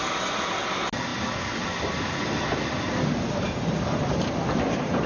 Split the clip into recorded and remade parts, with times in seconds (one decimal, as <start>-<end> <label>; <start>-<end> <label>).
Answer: 0.0-5.1 recorded